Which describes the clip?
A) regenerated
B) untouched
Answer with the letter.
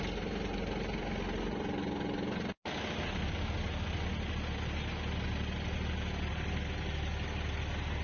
B